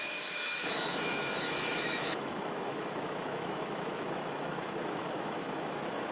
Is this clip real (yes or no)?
no